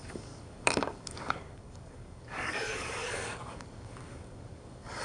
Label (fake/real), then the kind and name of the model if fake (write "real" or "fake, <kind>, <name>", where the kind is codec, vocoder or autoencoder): fake, codec, DAC